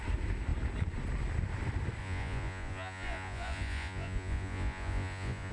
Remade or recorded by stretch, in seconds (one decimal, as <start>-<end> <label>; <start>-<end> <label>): 0.0-2.0 recorded; 2.0-5.5 remade